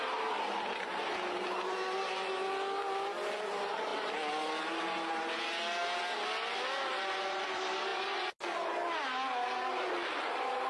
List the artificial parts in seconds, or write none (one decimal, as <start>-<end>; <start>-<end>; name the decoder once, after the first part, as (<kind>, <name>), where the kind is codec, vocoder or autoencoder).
none